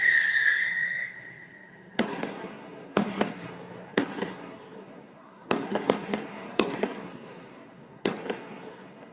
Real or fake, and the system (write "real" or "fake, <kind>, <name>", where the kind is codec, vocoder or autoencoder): fake, codec, SNAC